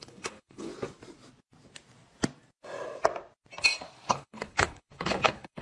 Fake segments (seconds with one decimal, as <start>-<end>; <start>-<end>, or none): 0.0-0.7; 4.1-5.6